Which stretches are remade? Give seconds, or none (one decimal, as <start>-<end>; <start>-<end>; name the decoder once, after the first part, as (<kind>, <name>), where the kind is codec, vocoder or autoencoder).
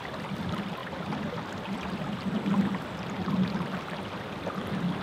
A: none